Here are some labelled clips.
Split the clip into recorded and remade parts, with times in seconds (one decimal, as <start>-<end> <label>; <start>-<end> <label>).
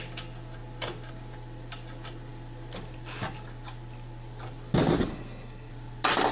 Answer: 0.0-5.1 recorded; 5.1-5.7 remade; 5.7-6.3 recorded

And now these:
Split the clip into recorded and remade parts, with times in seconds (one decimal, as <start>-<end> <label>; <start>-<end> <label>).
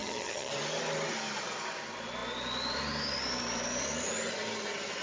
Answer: 0.0-0.5 remade; 0.5-5.0 recorded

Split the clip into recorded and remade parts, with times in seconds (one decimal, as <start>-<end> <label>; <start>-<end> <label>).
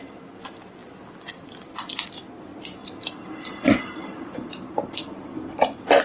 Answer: 0.0-2.5 recorded; 2.5-6.0 remade